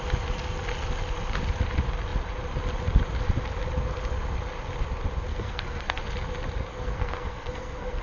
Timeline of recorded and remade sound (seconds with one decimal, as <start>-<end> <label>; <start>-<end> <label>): 0.0-5.3 recorded; 5.3-6.0 remade; 6.0-6.7 recorded; 6.7-8.0 remade

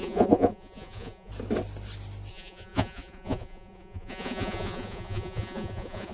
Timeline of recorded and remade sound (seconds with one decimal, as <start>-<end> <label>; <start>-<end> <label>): 0.0-1.3 remade; 1.3-2.3 recorded; 2.3-6.1 remade

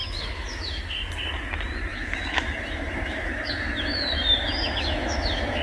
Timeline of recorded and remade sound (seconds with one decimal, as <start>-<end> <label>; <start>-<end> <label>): 0.0-0.8 remade; 0.8-1.9 recorded; 1.9-5.6 remade

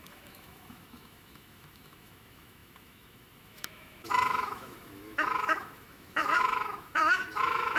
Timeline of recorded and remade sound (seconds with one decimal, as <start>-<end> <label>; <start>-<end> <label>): 0.0-7.8 remade